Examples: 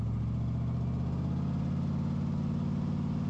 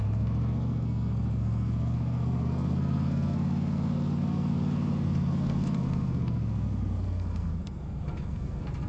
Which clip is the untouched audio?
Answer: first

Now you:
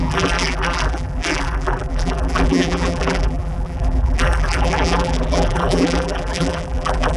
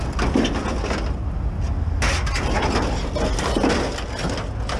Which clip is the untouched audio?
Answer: second